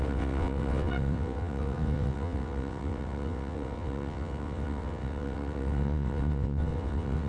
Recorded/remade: remade